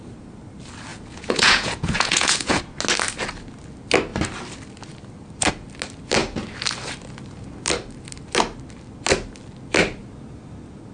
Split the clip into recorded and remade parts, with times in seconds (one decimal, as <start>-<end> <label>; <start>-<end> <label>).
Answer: 0.0-0.9 recorded; 0.9-2.6 remade; 2.6-10.9 recorded

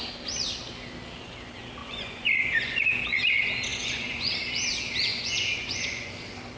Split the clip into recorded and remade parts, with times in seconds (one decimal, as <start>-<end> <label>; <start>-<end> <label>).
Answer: 0.0-1.8 recorded; 1.8-3.0 remade; 3.0-3.7 recorded; 3.7-4.3 remade; 4.3-5.1 recorded; 5.1-6.1 remade; 6.1-6.6 recorded

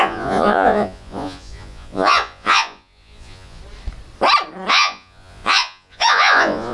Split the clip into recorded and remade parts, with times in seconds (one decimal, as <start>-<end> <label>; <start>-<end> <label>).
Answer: 0.0-3.6 remade; 3.6-4.7 recorded; 4.7-6.7 remade

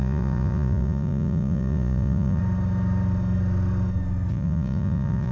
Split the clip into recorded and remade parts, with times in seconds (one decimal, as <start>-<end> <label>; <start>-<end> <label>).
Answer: 0.0-2.4 remade; 2.4-4.3 recorded; 4.3-5.3 remade